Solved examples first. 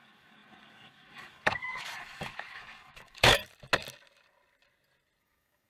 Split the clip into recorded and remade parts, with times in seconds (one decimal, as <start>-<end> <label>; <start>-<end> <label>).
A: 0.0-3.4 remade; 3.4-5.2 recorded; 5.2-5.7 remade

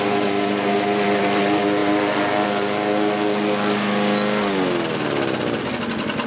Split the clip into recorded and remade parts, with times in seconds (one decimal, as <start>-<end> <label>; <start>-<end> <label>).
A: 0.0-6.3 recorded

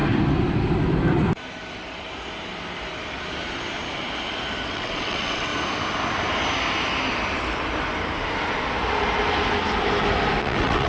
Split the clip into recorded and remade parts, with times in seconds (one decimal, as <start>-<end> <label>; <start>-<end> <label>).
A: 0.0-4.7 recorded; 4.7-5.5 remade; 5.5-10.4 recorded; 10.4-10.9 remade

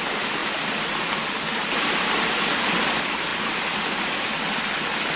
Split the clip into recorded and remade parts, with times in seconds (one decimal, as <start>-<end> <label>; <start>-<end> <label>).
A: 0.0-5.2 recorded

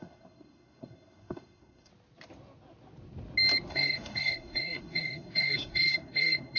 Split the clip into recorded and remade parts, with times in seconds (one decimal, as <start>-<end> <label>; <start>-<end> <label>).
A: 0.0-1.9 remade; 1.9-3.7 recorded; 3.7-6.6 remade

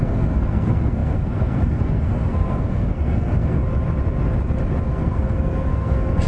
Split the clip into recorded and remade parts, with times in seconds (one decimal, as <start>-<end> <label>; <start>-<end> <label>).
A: 0.0-3.6 remade; 3.6-4.8 recorded; 4.8-6.3 remade

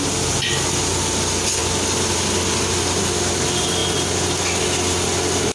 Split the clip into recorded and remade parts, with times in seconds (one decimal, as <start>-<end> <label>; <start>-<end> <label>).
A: 0.0-5.5 recorded

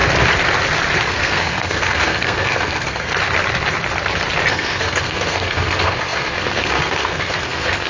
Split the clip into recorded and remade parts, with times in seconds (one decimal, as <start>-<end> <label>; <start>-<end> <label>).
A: 0.0-1.1 recorded; 1.1-3.1 remade; 3.1-4.5 recorded; 4.5-7.9 remade